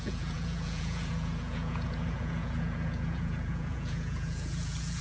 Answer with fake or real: fake